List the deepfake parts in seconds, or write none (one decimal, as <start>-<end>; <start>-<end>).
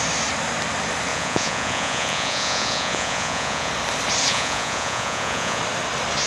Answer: 1.1-3.7; 4.3-5.6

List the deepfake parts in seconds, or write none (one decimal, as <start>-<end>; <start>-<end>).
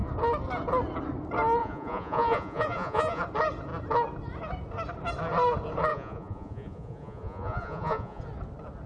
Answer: 1.6-3.2; 5.9-8.2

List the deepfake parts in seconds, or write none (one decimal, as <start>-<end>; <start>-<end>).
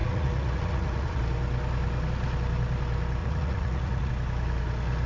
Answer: 0.0-1.2; 3.2-4.1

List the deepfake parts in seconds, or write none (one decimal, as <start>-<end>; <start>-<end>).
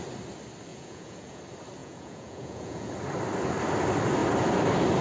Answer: 0.7-1.4; 1.8-2.9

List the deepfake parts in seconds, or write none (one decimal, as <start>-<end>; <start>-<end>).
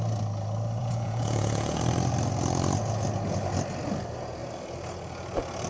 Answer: 0.8-1.8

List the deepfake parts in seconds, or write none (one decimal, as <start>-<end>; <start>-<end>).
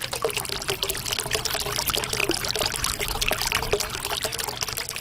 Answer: none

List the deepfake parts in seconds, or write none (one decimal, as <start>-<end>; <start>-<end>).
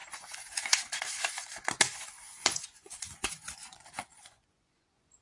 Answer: 0.0-1.0; 1.9-5.2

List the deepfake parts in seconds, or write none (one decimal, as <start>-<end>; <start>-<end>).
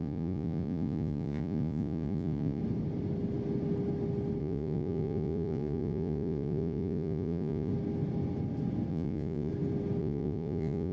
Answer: 0.0-2.6; 4.4-7.7; 8.9-9.5; 10.0-10.9